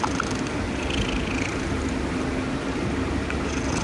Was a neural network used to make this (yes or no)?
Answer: no